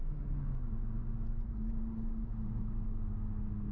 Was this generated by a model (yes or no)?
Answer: no